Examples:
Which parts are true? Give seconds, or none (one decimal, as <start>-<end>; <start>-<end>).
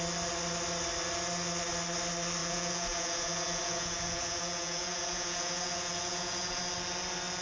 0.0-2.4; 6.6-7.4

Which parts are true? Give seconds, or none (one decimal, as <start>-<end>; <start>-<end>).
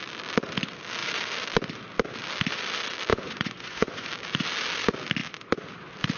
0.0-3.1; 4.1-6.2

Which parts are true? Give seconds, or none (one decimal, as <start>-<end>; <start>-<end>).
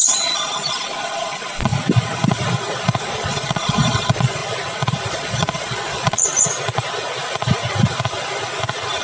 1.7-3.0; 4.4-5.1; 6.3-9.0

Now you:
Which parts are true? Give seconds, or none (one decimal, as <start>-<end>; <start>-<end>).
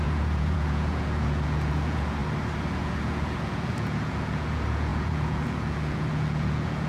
2.2-2.8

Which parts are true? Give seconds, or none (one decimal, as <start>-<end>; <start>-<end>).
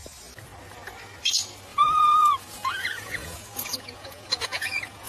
0.0-1.7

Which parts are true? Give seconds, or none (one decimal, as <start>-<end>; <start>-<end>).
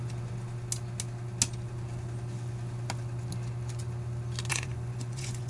0.0-4.5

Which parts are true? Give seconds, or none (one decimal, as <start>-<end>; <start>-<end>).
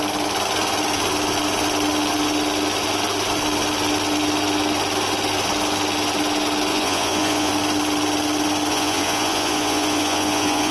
0.0-6.7; 7.5-8.7